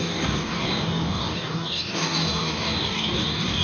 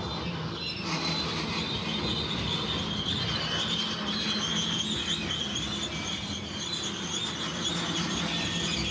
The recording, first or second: second